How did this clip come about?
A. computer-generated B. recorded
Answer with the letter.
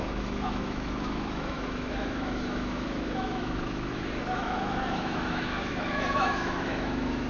A